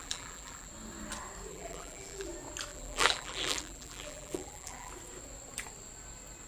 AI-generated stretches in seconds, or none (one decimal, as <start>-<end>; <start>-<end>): 0.0-0.7; 1.5-2.3; 2.7-4.9